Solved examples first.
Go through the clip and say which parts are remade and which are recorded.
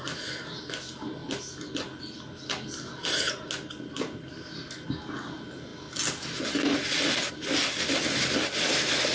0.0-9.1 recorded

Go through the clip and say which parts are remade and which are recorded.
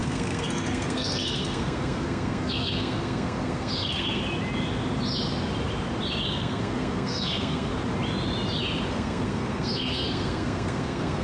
0.0-4.2 remade; 4.2-6.3 recorded; 6.3-7.7 remade; 7.7-8.9 recorded; 8.9-11.2 remade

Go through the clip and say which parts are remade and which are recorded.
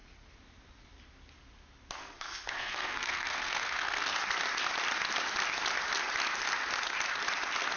0.0-2.0 recorded; 2.0-4.1 remade; 4.1-7.8 recorded